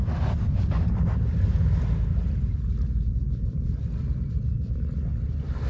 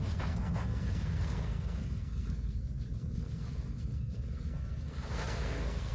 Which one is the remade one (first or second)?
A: second